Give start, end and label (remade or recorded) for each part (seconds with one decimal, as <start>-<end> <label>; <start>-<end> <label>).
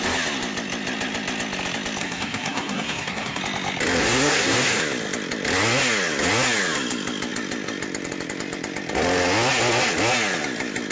0.0-2.0 recorded; 2.0-3.4 remade; 3.4-4.0 recorded; 4.0-4.8 remade; 4.8-10.9 recorded